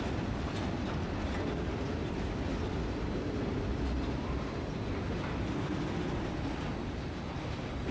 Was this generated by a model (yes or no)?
no